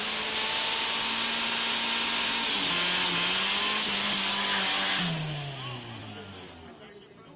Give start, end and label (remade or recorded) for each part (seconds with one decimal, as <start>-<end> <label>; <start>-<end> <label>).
0.0-7.4 recorded